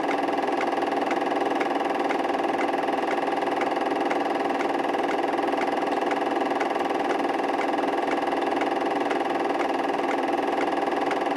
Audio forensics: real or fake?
real